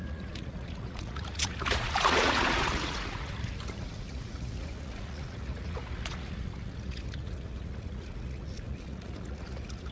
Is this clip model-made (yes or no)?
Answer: yes